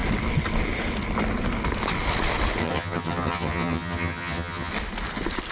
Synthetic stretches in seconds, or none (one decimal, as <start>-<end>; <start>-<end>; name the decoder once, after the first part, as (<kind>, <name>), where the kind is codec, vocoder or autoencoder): 2.6-4.7 (vocoder, HiFi-GAN)